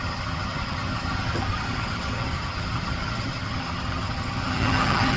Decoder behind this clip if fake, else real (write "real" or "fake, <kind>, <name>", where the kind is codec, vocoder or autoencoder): fake, vocoder, HiFi-GAN